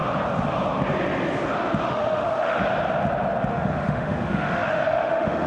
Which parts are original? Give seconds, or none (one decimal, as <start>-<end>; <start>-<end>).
0.0-1.9; 2.6-3.5